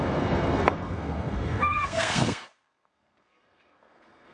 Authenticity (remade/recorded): remade